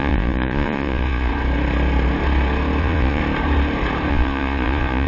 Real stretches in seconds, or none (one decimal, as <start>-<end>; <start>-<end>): 1.3-2.8; 3.2-4.1